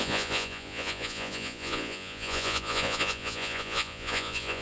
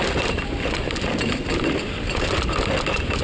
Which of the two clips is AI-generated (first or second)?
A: first